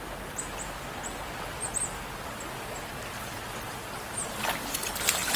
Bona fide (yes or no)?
yes